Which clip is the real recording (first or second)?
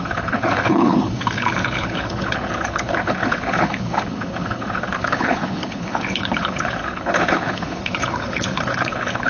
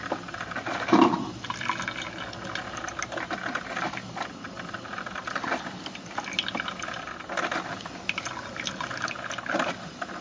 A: second